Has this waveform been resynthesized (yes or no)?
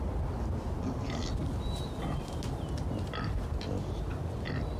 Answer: no